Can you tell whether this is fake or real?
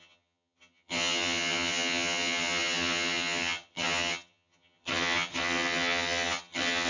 fake